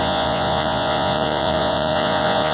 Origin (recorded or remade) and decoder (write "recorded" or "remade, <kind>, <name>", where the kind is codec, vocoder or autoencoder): remade, vocoder, Vocos